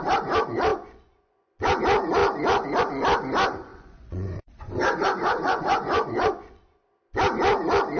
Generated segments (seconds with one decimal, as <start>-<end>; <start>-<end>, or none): 0.7-1.8; 3.7-6.8